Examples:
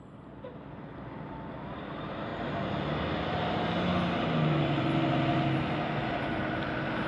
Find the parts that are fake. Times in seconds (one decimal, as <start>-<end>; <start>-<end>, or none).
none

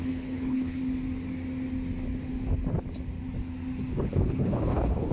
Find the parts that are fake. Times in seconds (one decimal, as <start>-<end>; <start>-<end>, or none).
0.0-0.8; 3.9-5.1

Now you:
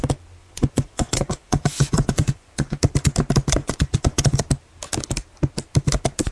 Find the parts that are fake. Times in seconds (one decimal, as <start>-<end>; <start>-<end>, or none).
0.4-2.8; 3.6-4.4

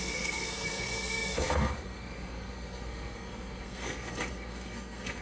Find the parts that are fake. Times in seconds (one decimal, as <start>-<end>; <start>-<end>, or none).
0.0-5.2